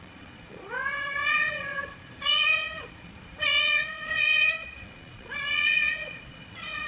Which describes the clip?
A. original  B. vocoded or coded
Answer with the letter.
B